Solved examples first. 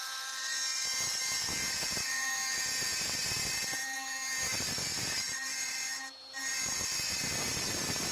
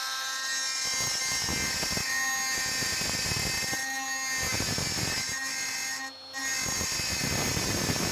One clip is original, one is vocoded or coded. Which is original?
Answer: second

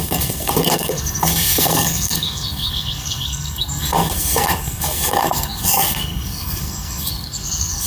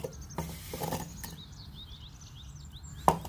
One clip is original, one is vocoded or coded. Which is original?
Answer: second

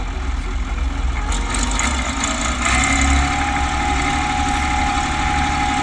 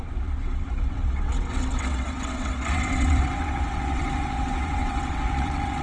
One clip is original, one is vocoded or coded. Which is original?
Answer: first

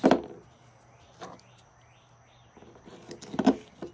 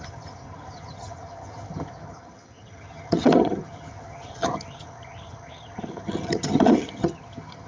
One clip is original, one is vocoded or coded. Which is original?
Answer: first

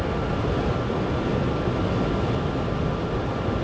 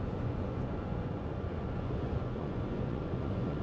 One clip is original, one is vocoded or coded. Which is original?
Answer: first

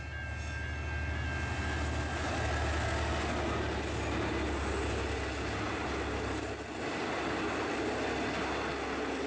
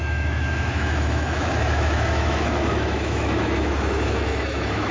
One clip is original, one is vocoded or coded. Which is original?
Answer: first